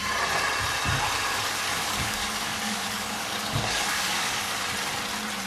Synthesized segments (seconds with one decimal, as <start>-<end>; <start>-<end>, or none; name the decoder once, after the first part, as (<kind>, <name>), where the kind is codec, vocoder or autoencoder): 1.3-4.6 (codec, DAC)